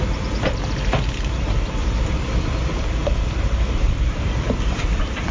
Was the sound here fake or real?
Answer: fake